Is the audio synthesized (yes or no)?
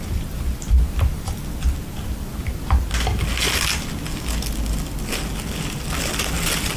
no